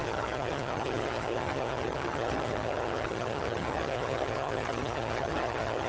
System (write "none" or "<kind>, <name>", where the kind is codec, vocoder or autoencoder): vocoder, HiFi-GAN